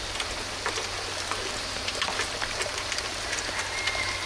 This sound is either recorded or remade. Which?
recorded